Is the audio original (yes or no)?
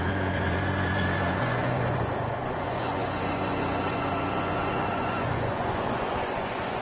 no